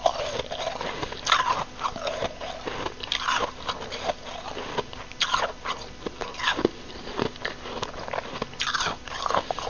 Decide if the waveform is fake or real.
real